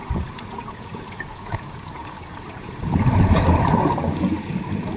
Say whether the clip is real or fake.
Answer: fake